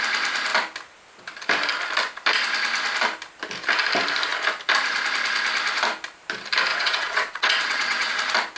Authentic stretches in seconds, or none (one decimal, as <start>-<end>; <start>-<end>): 0.0-6.7; 8.1-8.6